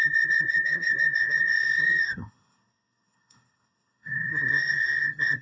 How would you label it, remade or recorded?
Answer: remade